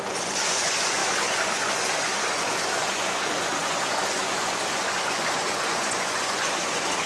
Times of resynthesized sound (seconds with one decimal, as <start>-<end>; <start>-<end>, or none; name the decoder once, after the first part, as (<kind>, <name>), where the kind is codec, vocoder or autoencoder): 0.0-7.1 (vocoder, Vocos)